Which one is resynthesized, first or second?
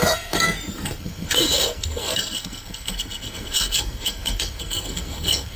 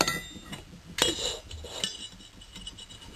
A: first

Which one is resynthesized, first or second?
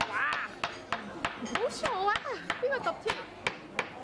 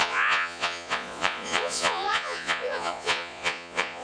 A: second